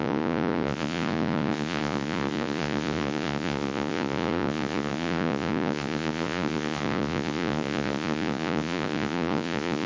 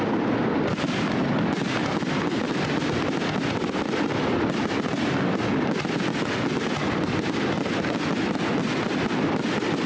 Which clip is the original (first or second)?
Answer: second